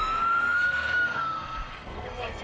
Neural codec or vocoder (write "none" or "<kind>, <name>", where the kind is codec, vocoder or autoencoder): codec, SNAC